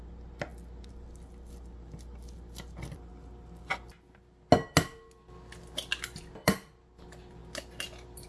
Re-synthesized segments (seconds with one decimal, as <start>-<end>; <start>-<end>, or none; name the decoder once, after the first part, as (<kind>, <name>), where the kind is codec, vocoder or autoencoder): none